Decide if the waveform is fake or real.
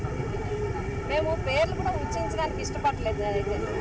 real